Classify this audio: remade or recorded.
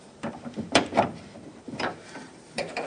remade